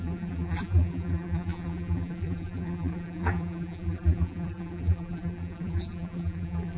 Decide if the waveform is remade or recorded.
remade